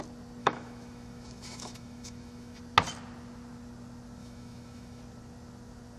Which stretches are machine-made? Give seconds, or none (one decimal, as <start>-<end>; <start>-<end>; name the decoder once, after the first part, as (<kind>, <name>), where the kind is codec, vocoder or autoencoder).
0.4-2.6 (autoencoder, DAC-VAE); 4.2-5.0